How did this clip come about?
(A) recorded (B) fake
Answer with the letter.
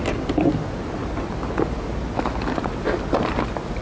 A